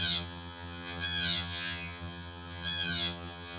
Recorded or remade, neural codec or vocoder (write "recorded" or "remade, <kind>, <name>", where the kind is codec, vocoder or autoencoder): remade, vocoder, HiFi-GAN